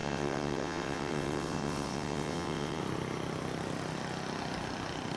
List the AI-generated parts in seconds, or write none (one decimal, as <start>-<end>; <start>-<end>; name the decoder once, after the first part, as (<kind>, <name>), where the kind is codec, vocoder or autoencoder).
0.0-2.8 (vocoder, WaveNeXt)